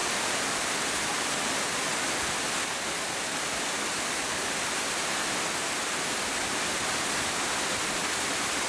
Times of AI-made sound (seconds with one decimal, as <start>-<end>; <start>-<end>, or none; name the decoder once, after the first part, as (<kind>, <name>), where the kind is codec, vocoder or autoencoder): 0.0-0.6 (vocoder, BigVGAN v2)